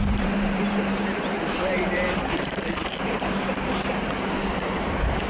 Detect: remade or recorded remade